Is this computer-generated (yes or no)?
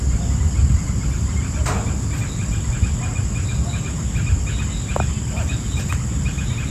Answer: no